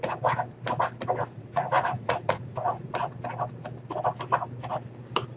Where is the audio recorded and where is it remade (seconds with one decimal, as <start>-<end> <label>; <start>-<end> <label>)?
0.0-1.2 recorded; 1.2-2.9 remade; 2.9-5.4 recorded